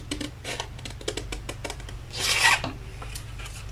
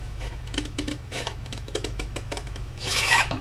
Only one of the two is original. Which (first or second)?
first